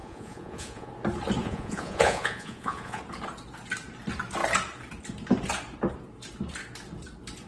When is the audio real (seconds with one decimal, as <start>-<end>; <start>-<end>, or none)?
0.9-1.4; 3.0-7.5